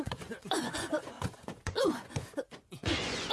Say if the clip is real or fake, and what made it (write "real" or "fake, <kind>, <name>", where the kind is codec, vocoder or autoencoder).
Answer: fake, vocoder, Vocos